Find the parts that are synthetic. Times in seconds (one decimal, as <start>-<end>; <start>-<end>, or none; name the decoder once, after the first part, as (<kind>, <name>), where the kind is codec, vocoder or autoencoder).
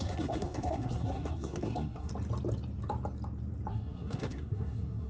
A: 0.0-2.1 (codec, SNAC); 3.7-5.1